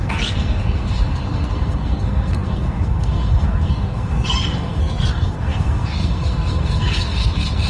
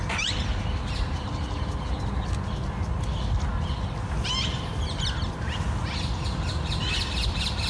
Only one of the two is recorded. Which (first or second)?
second